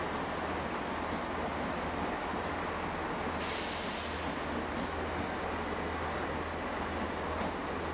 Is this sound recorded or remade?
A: recorded